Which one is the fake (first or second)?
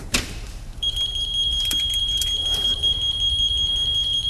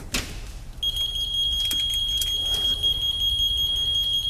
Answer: first